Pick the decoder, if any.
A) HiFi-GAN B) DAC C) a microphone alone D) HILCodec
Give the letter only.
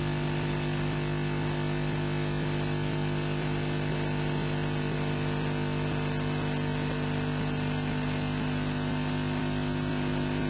C